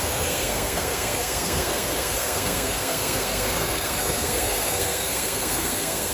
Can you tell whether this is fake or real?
fake